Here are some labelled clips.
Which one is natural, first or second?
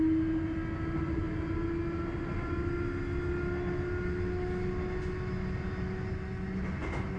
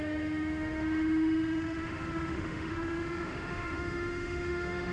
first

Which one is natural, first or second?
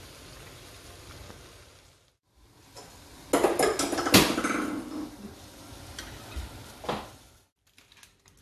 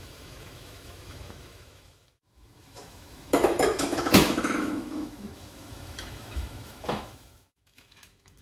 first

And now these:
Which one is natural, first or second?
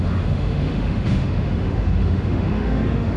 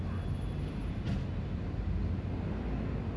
second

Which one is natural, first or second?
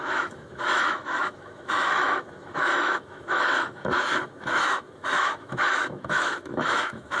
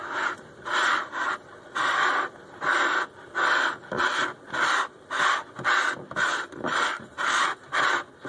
second